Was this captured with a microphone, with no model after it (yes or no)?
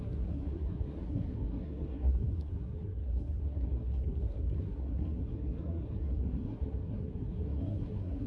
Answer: no